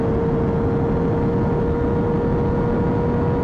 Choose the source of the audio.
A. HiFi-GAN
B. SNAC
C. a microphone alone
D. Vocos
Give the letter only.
C